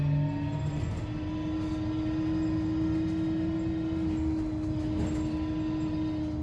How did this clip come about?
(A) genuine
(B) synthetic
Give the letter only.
A